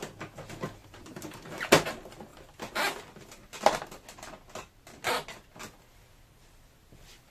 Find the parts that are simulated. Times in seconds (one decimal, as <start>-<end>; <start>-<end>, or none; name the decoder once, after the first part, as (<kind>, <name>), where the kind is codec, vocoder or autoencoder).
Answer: 0.8-1.6 (vocoder, BigVGAN v2)